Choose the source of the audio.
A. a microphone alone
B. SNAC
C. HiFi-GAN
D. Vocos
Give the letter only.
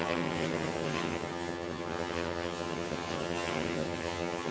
C